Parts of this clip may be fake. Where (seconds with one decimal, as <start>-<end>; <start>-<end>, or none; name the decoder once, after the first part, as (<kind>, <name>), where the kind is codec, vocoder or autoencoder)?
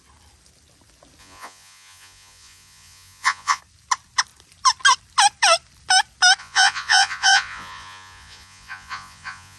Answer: 1.2-3.6 (vocoder, Vocos); 6.4-9.6